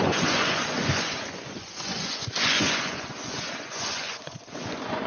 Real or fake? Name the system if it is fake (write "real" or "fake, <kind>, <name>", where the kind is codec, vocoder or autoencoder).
fake, vocoder, Vocos